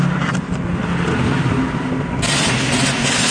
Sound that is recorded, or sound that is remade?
recorded